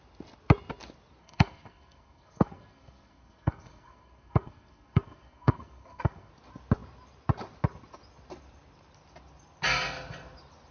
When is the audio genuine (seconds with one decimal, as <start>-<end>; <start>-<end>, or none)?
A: 0.0-1.2; 6.3-10.7